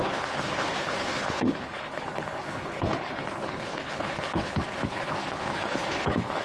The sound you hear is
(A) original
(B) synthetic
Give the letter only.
B